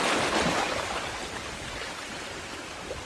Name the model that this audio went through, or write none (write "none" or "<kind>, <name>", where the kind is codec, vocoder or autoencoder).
none